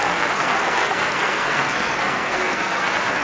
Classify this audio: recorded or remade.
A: remade